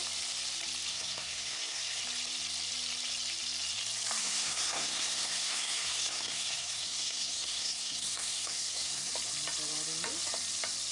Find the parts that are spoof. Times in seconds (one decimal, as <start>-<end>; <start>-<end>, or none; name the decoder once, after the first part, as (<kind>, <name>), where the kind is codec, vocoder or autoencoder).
0.9-2.0 (codec, SNAC); 4.2-9.1